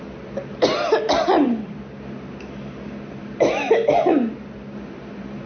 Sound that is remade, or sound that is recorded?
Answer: recorded